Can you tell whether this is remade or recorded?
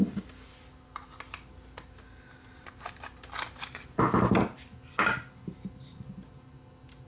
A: recorded